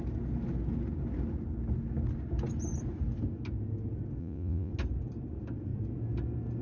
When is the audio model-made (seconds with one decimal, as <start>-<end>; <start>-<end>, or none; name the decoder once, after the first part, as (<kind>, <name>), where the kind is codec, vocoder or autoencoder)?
4.2-4.7 (vocoder, Vocos)